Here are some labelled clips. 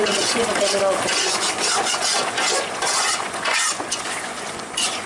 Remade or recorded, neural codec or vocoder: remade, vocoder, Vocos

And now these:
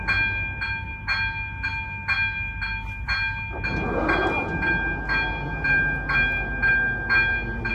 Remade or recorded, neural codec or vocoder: recorded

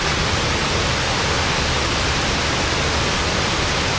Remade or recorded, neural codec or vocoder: recorded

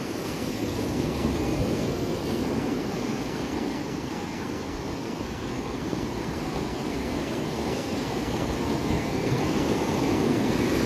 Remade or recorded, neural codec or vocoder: remade, codec, SNAC